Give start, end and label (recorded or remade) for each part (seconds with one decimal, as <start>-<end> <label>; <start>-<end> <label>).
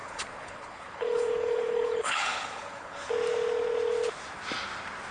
0.0-3.1 remade; 3.1-5.1 recorded